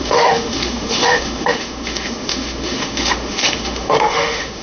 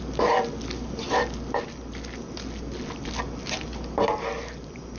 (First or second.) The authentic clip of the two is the second